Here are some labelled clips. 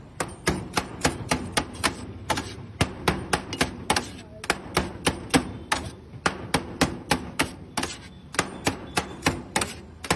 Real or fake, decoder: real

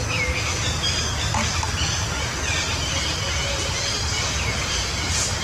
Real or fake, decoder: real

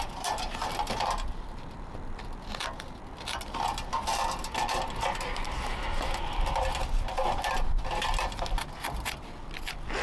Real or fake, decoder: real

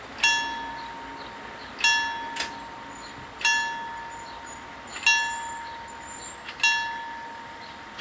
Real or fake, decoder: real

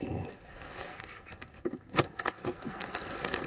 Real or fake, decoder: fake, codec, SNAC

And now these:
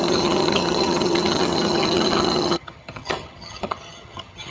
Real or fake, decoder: fake, vocoder, HiFi-GAN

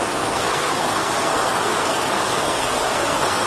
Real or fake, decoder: fake, codec, SNAC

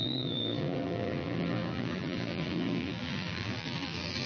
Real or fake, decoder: fake, vocoder, BigVGAN v2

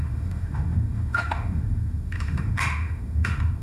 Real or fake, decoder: fake, autoencoder, DAC-VAE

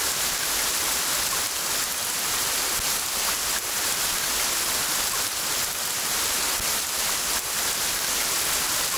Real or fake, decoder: real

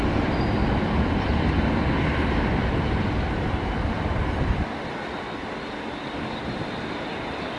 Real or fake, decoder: real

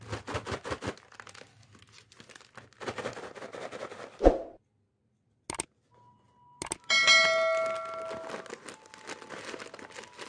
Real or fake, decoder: real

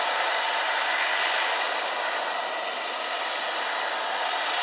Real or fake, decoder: real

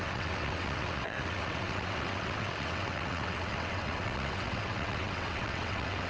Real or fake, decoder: fake, vocoder, WaveNeXt